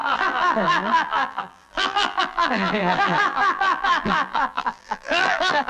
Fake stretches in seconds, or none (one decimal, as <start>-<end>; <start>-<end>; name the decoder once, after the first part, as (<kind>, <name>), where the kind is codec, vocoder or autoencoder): 0.0-5.7 (vocoder, BigVGAN v2)